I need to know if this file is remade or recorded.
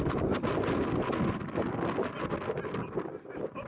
recorded